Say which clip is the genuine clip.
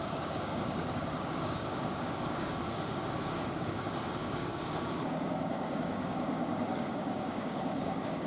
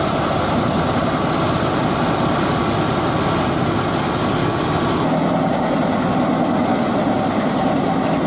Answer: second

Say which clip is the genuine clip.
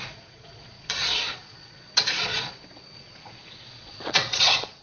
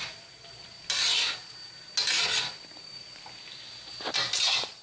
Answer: second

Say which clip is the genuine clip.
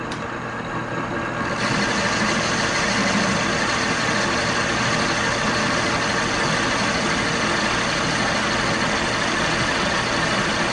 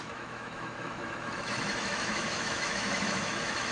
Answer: first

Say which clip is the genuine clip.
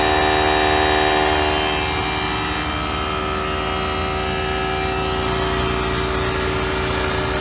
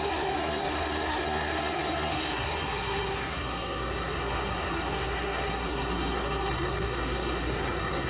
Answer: first